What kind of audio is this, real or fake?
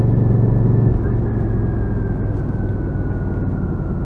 real